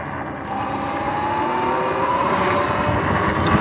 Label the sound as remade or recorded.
recorded